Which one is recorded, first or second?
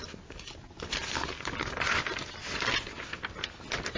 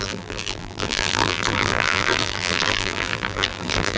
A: first